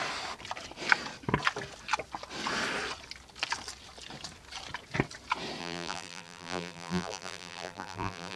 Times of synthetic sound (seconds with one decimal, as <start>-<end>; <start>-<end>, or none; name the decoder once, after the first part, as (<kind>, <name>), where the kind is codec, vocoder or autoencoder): 5.6-8.4 (vocoder, BigVGAN v2)